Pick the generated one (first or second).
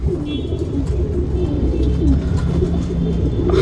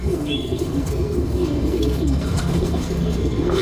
second